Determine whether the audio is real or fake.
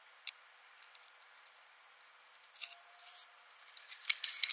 real